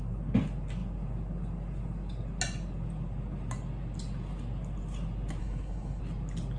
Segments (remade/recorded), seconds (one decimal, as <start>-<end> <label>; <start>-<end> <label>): 0.0-5.4 recorded; 5.4-6.0 remade; 6.0-6.6 recorded